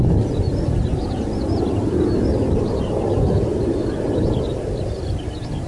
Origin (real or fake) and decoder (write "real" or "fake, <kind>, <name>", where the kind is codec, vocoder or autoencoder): real